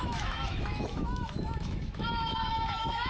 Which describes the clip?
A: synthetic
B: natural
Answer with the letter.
A